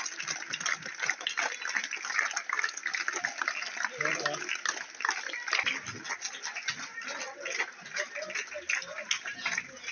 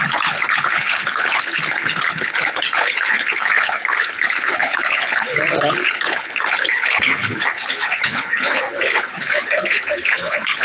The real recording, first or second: first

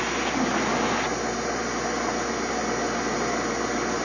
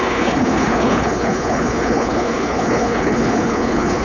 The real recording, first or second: first